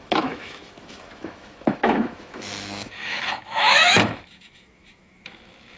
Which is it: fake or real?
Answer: fake